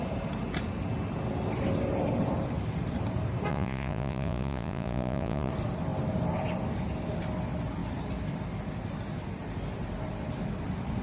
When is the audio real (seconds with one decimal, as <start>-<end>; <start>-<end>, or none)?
0.0-3.5; 5.5-11.0